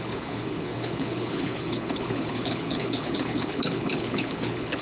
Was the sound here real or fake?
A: fake